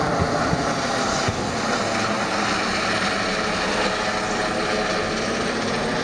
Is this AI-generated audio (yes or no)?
no